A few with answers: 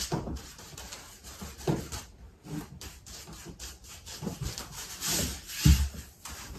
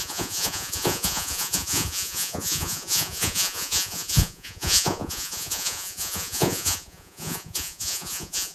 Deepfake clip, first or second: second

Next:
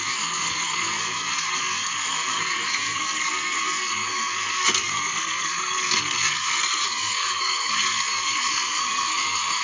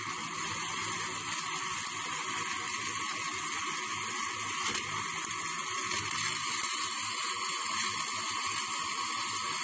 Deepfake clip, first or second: first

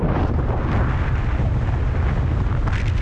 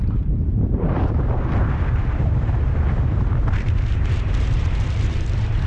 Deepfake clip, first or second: second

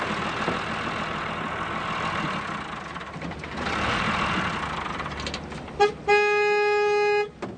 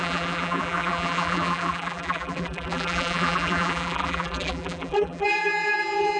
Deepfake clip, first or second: second